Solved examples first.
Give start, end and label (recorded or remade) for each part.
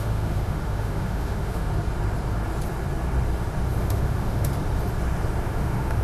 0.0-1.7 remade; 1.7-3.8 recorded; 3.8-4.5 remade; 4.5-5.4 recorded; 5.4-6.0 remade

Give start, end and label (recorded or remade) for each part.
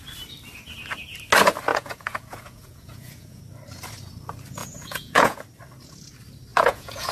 0.0-1.7 recorded; 1.7-3.4 remade; 3.4-4.6 recorded; 4.6-5.4 remade; 5.4-6.5 recorded; 6.5-7.1 remade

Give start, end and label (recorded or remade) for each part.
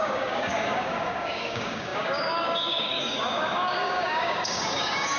0.0-5.2 remade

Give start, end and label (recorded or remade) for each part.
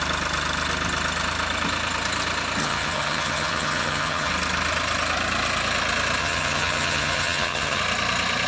0.0-2.6 recorded; 2.6-4.3 remade; 4.3-6.2 recorded; 6.2-7.8 remade; 7.8-8.5 recorded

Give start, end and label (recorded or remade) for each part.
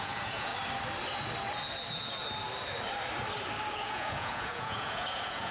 0.0-0.5 remade; 0.5-3.7 recorded; 3.7-5.5 remade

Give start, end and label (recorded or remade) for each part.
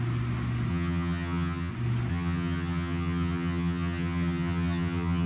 0.0-0.7 recorded; 0.7-1.7 remade; 1.7-2.1 recorded; 2.1-5.3 remade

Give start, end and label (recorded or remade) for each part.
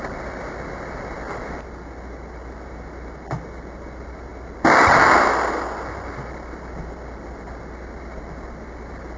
0.0-9.2 recorded